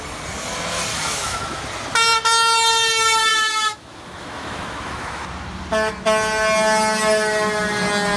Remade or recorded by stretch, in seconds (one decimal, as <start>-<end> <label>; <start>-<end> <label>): 0.0-0.9 recorded; 0.9-1.4 remade; 1.4-3.3 recorded; 3.3-5.3 remade; 5.3-8.2 recorded

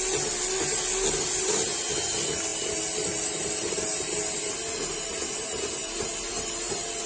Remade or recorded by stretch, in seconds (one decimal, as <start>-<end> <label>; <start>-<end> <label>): 0.0-7.1 recorded

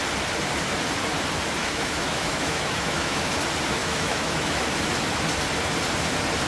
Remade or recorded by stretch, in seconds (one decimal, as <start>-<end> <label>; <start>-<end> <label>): 0.0-1.6 recorded; 1.6-3.3 remade; 3.3-3.8 recorded; 3.8-4.6 remade; 4.6-6.5 recorded

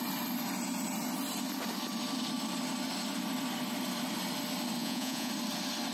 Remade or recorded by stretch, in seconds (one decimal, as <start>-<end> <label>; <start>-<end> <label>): 0.0-4.8 recorded; 4.8-5.3 remade; 5.3-5.9 recorded

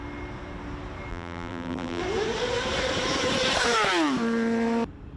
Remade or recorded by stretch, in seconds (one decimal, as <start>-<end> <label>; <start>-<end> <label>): 0.0-1.1 recorded; 1.1-2.0 remade; 2.0-5.2 recorded

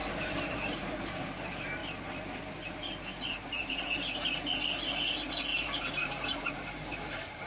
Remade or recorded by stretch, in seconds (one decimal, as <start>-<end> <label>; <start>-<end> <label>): 0.0-0.9 remade; 0.9-5.5 recorded; 5.5-6.4 remade; 6.4-6.9 recorded; 6.9-7.5 remade

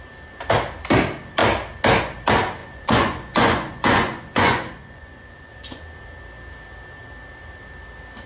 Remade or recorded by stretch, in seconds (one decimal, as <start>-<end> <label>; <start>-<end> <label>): 0.0-2.6 recorded; 2.6-5.8 remade; 5.8-8.3 recorded

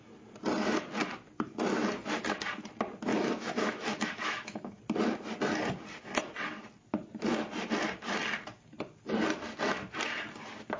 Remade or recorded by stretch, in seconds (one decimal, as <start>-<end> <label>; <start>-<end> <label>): 0.0-3.1 recorded; 3.1-4.8 remade; 4.8-10.8 recorded